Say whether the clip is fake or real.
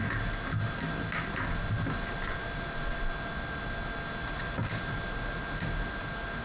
real